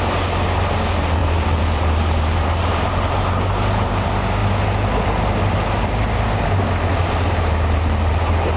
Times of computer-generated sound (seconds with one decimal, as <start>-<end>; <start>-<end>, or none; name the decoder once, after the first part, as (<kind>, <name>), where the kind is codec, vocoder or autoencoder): 1.2-3.8 (vocoder, BigVGAN v2); 7.0-8.1